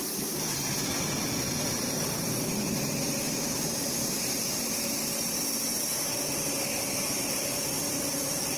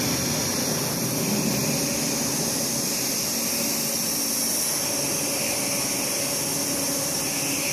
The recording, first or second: second